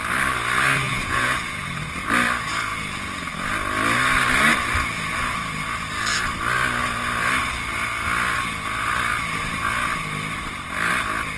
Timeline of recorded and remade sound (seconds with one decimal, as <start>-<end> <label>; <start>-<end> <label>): 0.0-0.9 recorded; 0.9-1.9 remade; 1.9-11.4 recorded